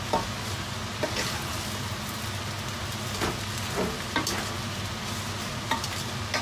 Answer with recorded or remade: recorded